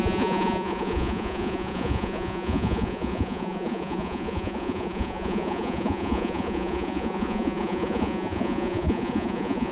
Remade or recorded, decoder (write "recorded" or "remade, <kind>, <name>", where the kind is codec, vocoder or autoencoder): remade, vocoder, Vocos